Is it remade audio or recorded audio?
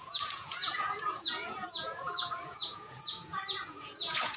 remade